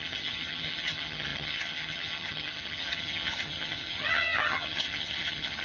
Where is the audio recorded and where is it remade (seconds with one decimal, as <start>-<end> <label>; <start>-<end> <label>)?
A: 0.0-5.6 remade